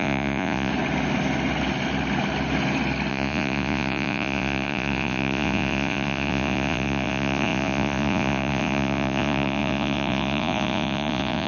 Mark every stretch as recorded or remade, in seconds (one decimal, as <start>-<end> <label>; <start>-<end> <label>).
0.0-0.7 remade; 0.7-3.1 recorded; 3.1-11.5 remade